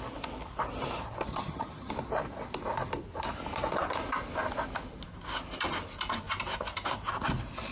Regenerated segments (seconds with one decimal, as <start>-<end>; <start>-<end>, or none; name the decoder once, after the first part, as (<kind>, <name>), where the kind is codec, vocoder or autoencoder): 1.3-1.9 (vocoder, HiFi-GAN)